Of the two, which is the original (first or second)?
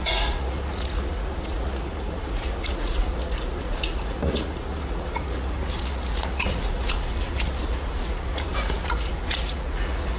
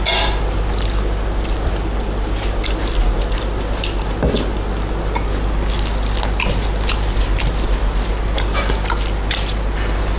second